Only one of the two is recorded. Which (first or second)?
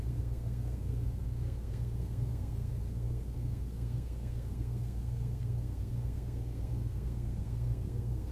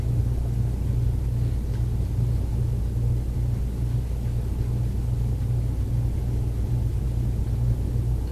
second